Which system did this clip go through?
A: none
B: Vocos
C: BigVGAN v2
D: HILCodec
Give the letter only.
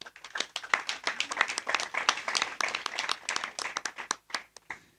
A